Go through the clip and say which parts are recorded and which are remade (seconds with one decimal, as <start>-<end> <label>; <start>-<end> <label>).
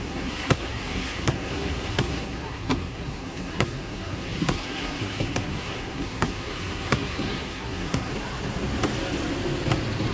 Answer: 0.0-8.1 remade; 8.1-10.1 recorded